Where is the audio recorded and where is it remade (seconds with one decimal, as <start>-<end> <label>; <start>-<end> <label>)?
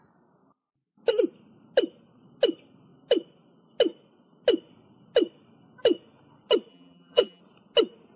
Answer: 0.0-6.7 recorded; 6.7-7.4 remade; 7.4-8.2 recorded